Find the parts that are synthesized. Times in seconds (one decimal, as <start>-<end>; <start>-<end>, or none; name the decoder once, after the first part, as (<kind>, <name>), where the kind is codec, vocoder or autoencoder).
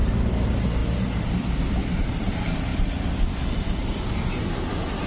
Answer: 0.8-2.3 (vocoder, BigVGAN v2); 2.7-3.3